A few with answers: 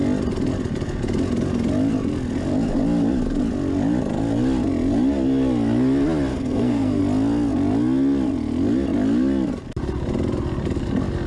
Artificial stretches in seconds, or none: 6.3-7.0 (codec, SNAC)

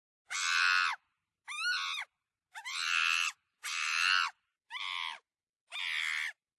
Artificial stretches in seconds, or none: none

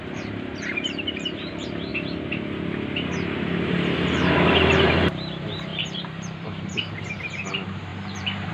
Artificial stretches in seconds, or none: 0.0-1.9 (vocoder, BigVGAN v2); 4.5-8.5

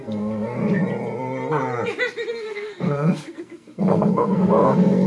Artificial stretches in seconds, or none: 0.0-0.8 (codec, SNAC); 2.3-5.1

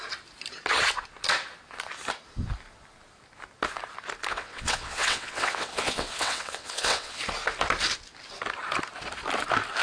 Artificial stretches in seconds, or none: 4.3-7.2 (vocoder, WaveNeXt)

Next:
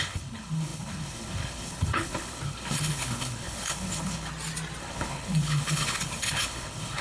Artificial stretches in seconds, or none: 0.0-4.3 (codec, HILCodec); 4.8-7.0

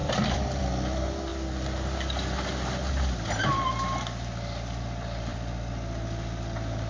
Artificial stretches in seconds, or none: 0.0-0.6 (vocoder, BigVGAN v2); 5.3-6.9

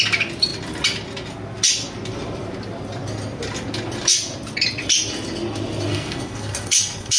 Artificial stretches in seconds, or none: 5.9-7.2 (codec, SNAC)